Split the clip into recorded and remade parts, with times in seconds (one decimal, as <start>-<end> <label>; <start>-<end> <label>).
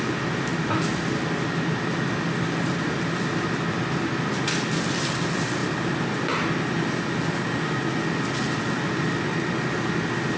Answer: 0.0-10.4 recorded